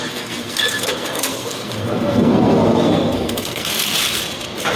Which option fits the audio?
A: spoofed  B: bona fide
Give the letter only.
A